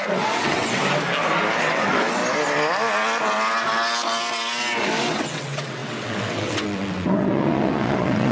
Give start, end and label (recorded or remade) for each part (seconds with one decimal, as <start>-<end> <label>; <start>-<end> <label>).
0.0-0.8 remade; 0.8-1.6 recorded; 1.6-2.2 remade; 2.2-5.0 recorded; 5.0-8.3 remade